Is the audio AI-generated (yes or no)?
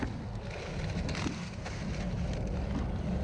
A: no